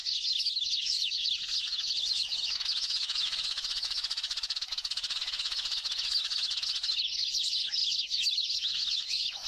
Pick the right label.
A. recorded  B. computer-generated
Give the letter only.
B